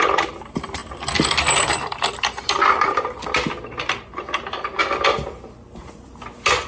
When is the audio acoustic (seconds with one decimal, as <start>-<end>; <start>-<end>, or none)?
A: 0.0-6.7